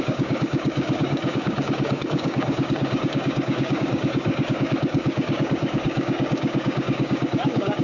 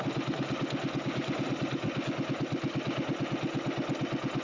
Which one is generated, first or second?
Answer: first